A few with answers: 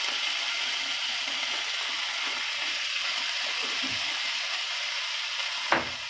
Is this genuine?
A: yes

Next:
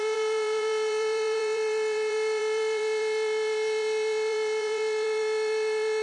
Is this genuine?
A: no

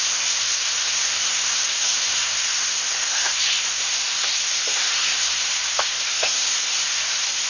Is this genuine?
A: no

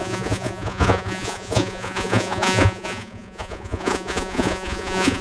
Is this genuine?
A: no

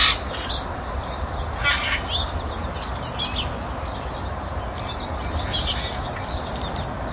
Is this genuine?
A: yes